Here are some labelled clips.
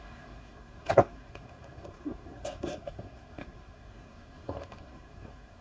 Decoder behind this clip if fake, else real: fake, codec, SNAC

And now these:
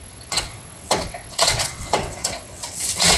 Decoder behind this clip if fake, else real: fake, vocoder, WaveNeXt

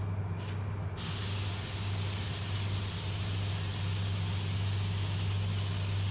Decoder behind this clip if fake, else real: real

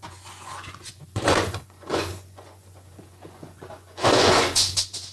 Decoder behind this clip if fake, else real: fake, vocoder, Vocos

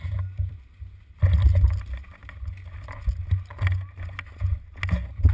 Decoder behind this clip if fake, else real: real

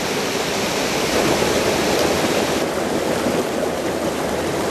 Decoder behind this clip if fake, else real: real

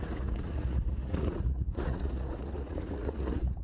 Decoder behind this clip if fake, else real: fake, vocoder, Vocos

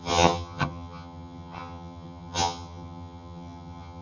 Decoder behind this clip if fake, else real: fake, vocoder, HiFi-GAN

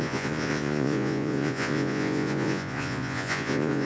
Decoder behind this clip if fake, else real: fake, vocoder, Vocos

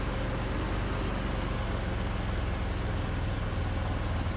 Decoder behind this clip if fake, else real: real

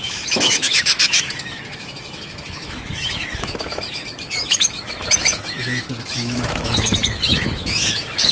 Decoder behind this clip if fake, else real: fake, autoencoder, DAC-VAE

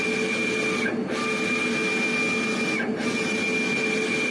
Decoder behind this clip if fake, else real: real